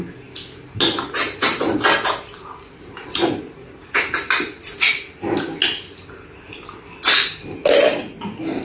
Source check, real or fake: real